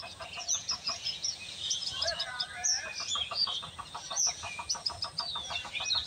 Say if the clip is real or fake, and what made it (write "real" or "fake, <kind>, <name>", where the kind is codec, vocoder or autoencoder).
fake, vocoder, Vocos